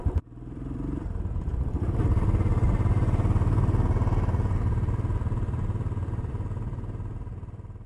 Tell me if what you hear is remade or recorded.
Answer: remade